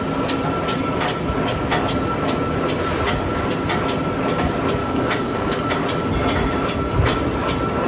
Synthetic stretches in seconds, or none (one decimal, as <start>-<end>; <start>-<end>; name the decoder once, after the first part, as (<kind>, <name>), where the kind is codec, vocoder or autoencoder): 4.8-5.7 (codec, DAC)